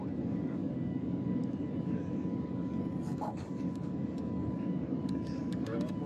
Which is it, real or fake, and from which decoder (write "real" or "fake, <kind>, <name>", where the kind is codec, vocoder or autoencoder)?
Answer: fake, codec, DAC